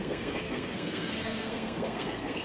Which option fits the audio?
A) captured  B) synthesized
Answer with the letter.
B